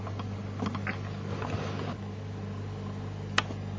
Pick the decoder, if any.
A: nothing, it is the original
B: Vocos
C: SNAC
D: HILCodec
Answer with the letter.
A